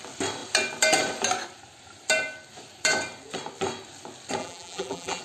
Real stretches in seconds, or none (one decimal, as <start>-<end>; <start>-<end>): 0.0-4.4